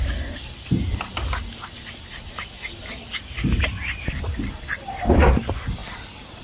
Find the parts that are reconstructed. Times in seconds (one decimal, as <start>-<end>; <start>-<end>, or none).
0.0-6.4